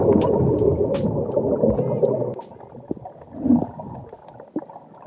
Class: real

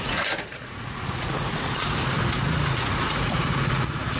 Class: fake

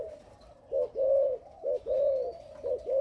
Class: fake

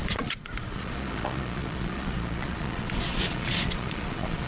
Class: fake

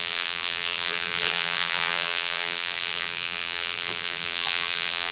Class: fake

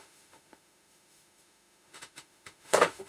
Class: fake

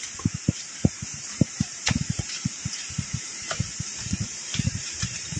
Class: fake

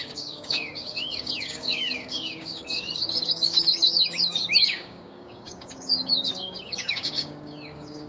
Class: fake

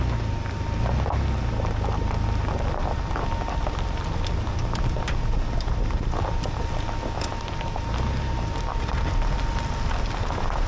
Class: real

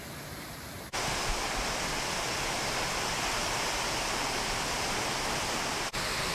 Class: real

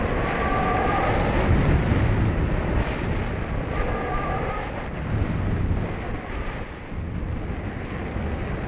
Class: real